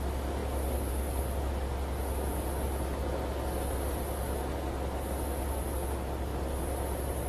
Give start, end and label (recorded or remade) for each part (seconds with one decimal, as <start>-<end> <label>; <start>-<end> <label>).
0.0-7.3 recorded